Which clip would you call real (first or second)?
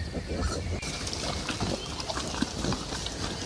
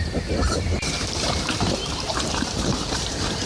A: first